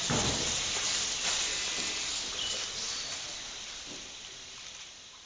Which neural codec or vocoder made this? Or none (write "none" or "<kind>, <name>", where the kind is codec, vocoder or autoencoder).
none